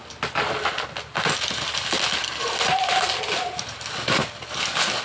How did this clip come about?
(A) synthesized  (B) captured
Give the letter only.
B